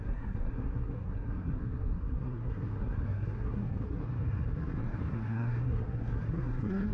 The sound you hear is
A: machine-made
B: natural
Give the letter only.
A